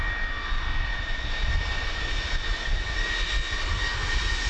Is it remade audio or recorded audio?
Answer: recorded